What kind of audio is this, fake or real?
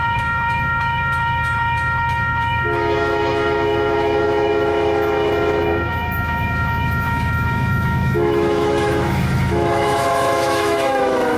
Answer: fake